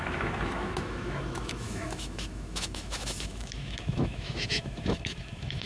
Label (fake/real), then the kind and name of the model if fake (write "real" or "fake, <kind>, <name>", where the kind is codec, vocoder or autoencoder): fake, autoencoder, DAC-VAE